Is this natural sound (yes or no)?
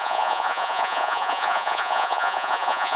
no